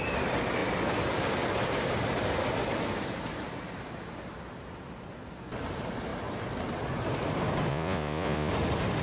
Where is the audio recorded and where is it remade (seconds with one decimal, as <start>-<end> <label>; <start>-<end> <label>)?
0.0-7.7 recorded; 7.7-8.5 remade; 8.5-9.0 recorded